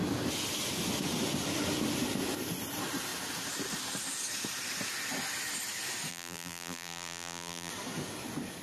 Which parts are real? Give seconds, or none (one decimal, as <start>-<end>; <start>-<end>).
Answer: 0.0-6.1; 7.7-8.6